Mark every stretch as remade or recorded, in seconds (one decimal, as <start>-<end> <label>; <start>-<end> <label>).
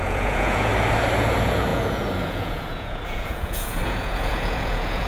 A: 0.0-0.7 remade; 0.7-1.2 recorded; 1.2-5.1 remade